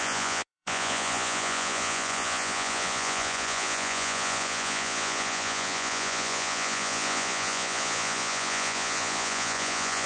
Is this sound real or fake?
fake